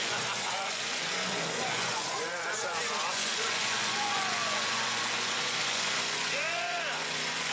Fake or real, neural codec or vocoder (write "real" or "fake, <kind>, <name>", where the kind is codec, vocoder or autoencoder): fake, vocoder, Vocos